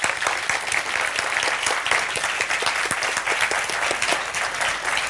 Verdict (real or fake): real